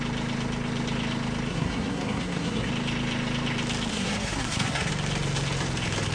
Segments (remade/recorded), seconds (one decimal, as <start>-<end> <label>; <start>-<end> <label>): 0.0-1.5 recorded; 1.5-2.7 remade; 2.7-3.9 recorded; 3.9-4.9 remade; 4.9-6.1 recorded